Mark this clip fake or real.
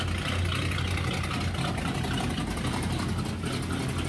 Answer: real